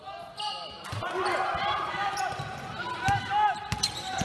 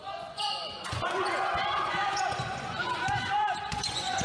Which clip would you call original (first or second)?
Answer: first